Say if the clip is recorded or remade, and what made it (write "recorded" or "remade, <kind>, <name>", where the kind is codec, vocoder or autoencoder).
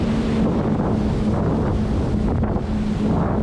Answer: recorded